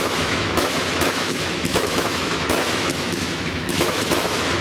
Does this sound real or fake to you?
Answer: fake